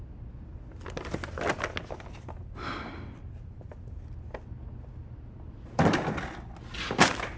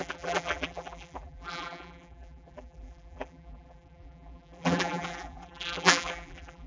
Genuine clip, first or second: first